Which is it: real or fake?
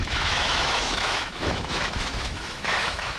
fake